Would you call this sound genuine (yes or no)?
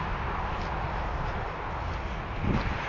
yes